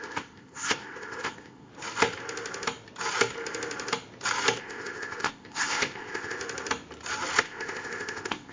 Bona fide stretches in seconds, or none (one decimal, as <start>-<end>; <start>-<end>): 1.7-4.6; 6.4-7.4